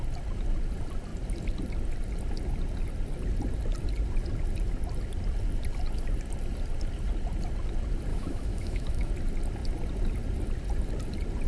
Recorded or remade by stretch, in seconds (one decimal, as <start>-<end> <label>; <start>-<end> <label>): 0.0-8.1 recorded; 8.1-9.1 remade; 9.1-11.5 recorded